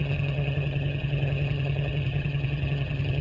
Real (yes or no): no